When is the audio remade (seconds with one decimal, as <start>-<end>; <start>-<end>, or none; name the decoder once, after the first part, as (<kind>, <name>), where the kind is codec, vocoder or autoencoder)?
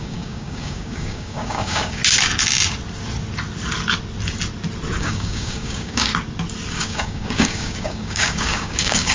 0.0-2.0 (codec, DAC); 5.0-6.1; 6.7-9.1